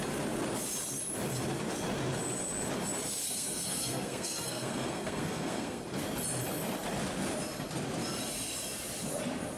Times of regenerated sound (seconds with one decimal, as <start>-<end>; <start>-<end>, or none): 3.2-5.8